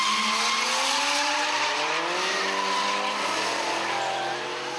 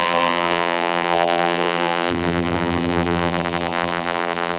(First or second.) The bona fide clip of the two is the first